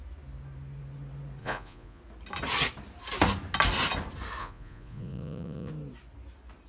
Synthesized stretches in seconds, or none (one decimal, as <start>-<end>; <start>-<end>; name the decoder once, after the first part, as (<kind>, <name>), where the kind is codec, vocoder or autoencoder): 1.4-2.0 (vocoder, Vocos); 4.4-5.7